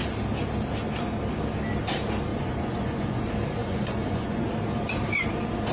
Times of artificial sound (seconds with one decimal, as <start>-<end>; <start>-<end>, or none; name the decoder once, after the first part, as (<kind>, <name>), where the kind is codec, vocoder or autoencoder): 2.3-3.2 (vocoder, Vocos); 3.6-4.4

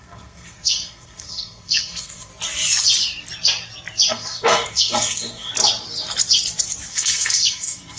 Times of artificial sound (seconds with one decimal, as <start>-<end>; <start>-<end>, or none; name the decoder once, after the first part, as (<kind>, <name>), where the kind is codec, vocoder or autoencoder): 0.0-2.3 (codec, SNAC); 4.1-5.5; 6.9-8.0